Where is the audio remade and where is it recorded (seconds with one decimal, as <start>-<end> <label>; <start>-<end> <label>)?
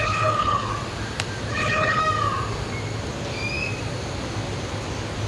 0.0-0.7 remade; 0.7-1.5 recorded; 1.5-2.0 remade; 2.0-5.3 recorded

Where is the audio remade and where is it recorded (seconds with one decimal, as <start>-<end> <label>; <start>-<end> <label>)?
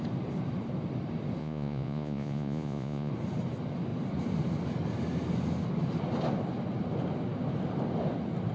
0.0-1.4 recorded; 1.4-3.1 remade; 3.1-8.5 recorded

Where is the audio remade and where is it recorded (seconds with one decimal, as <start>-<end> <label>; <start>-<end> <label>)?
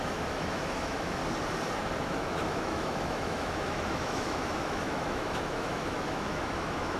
0.0-1.2 remade; 1.2-2.0 recorded; 2.0-7.0 remade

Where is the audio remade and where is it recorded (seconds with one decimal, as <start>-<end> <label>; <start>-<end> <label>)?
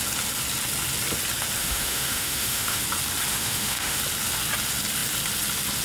0.0-1.6 recorded; 1.6-2.8 remade; 2.8-3.3 recorded; 3.3-4.0 remade; 4.0-5.8 recorded